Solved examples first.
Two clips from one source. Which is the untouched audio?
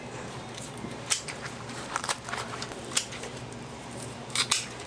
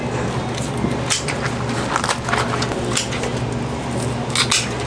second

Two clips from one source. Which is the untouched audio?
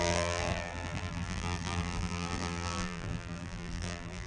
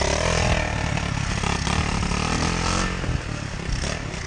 second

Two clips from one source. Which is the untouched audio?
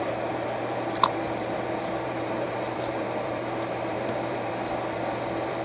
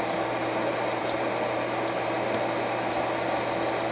second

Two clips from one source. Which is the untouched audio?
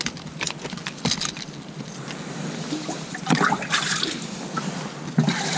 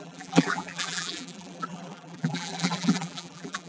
first